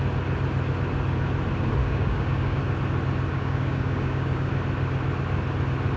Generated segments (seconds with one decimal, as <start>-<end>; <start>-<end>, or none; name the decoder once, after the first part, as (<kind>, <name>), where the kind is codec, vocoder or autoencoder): 1.8-2.6 (codec, DAC); 3.3-4.5